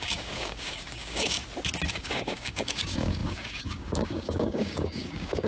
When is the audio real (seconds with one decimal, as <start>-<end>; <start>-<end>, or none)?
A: 1.4-1.9